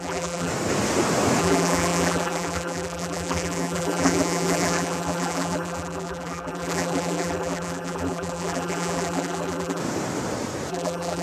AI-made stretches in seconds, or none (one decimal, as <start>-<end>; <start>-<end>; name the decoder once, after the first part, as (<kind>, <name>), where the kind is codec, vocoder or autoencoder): 0.0-0.5 (vocoder, BigVGAN v2); 1.4-9.8; 10.7-11.2